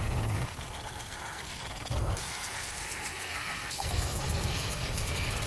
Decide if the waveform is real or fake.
fake